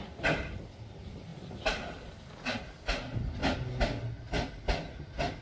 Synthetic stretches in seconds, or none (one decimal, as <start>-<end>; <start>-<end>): none